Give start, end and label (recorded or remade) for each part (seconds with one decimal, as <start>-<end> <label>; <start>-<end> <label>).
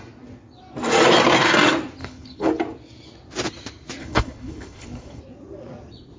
0.0-2.0 recorded; 2.0-2.5 remade; 2.5-4.0 recorded; 4.0-5.2 remade; 5.2-6.2 recorded